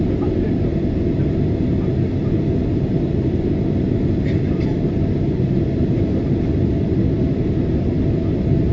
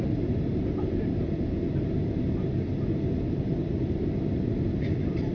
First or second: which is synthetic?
second